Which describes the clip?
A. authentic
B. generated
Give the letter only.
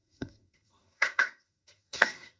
B